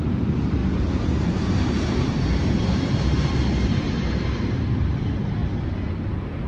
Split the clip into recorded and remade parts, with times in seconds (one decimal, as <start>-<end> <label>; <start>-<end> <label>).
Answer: 0.0-0.6 remade; 0.6-1.2 recorded; 1.2-5.4 remade; 5.4-6.0 recorded; 6.0-6.5 remade